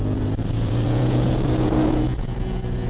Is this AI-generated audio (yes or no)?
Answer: yes